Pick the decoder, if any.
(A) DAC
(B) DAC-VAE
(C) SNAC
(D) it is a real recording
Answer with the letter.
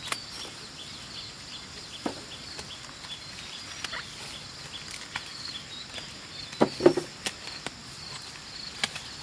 D